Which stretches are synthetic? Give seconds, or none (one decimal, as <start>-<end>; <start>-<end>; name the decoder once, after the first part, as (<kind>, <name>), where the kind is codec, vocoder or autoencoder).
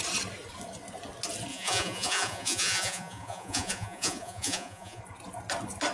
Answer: 1.5-5.0 (vocoder, Vocos)